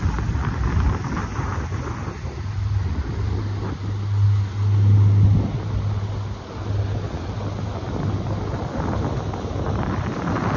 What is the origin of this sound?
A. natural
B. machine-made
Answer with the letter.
A